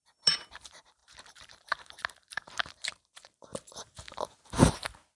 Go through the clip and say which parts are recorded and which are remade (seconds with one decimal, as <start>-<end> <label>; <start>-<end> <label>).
0.0-3.5 remade; 3.5-4.2 recorded; 4.2-5.2 remade